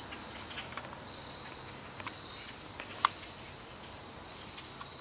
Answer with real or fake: real